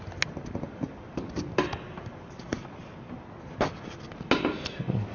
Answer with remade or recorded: recorded